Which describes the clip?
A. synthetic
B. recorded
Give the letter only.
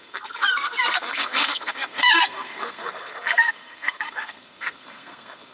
A